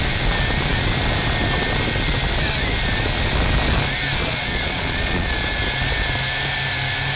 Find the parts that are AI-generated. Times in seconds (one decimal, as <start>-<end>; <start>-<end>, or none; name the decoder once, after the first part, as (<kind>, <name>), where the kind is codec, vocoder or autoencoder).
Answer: 4.2-5.6 (vocoder, Vocos)